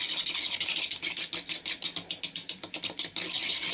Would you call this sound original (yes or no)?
yes